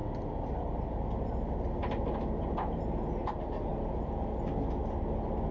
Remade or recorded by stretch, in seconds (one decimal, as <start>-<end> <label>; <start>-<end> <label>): 0.0-5.5 recorded